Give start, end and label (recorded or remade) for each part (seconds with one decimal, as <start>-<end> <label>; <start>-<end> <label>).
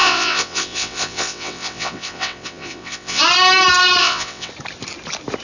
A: 0.0-3.2 remade; 3.2-4.0 recorded; 4.0-4.5 remade; 4.5-5.4 recorded